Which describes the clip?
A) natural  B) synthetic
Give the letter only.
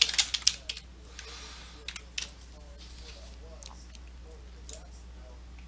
A